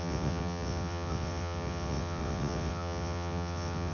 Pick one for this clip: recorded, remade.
remade